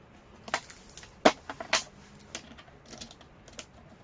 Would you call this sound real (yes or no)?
yes